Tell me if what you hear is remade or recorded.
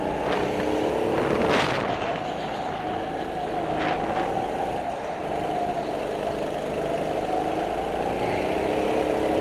recorded